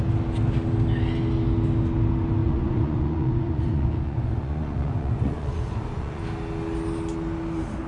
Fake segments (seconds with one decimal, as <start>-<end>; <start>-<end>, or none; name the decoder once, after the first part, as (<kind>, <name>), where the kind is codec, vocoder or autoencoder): 2.4-6.2 (vocoder, Vocos)

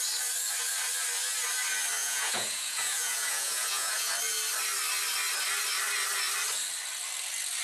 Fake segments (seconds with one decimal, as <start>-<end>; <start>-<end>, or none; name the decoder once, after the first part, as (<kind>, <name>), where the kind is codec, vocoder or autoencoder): 2.0-4.1 (vocoder, Vocos)

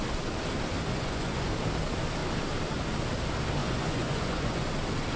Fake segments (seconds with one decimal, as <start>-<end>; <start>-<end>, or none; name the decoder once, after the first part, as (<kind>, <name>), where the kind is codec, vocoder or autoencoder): 0.9-1.5 (vocoder, Vocos); 3.6-4.6

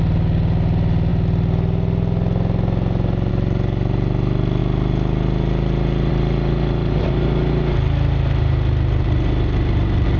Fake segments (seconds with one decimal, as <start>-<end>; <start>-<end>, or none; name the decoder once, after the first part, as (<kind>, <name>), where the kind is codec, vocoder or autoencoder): none

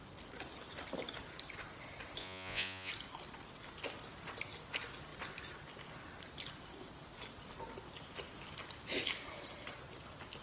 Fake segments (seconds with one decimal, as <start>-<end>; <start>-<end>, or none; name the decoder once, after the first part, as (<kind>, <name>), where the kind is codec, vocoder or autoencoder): 2.2-2.9 (vocoder, Vocos)

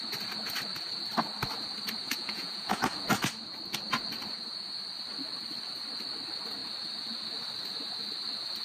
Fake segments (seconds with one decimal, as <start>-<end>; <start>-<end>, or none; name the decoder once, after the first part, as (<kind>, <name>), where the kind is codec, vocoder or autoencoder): 2.0-2.8 (vocoder, Vocos)

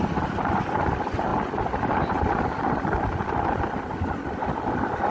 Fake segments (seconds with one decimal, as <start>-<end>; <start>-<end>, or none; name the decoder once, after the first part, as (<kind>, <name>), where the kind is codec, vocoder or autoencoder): none